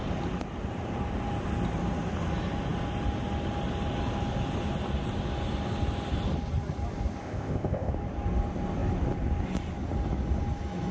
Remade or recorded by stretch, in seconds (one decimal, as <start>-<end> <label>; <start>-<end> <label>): 0.0-7.2 recorded; 7.2-7.9 remade; 7.9-10.9 recorded